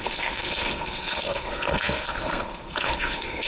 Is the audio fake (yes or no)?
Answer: yes